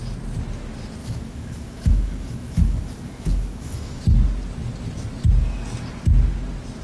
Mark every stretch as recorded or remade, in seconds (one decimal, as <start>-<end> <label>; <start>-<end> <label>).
0.0-1.0 recorded; 1.0-4.0 remade; 4.0-6.8 recorded